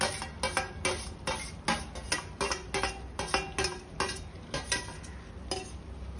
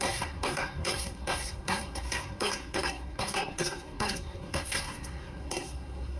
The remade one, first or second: second